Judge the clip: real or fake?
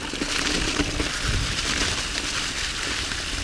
real